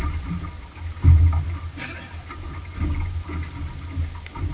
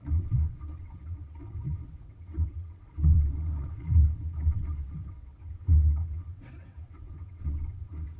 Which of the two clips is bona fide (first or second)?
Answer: first